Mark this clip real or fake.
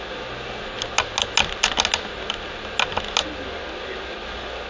real